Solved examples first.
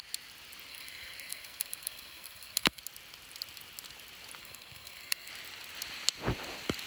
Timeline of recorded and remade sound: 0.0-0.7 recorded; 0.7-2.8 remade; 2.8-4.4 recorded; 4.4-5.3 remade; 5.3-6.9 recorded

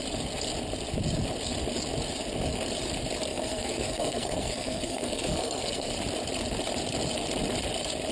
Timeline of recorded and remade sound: 0.0-3.3 recorded; 3.3-5.9 remade; 5.9-8.1 recorded

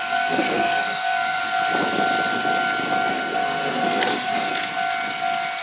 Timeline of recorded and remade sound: 0.0-1.4 remade; 1.4-3.1 recorded; 3.1-4.5 remade; 4.5-5.6 recorded

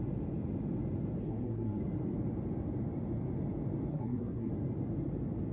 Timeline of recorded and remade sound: 0.0-1.2 recorded; 1.2-1.8 remade; 1.8-3.9 recorded; 3.9-4.5 remade; 4.5-5.5 recorded